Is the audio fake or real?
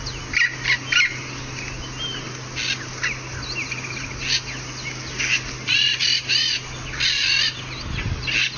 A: real